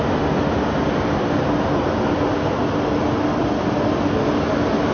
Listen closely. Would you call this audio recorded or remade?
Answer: recorded